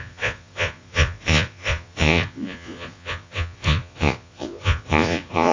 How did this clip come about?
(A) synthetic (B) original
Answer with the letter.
A